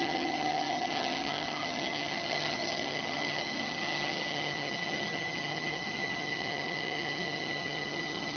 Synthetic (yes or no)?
yes